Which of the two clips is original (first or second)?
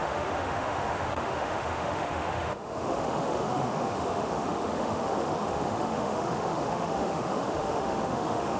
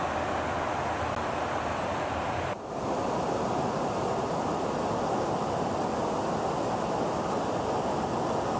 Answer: second